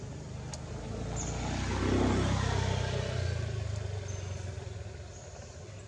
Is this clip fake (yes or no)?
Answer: no